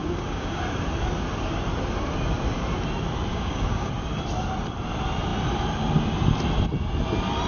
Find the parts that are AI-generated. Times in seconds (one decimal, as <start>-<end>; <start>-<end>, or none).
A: 0.0-0.6; 3.3-3.9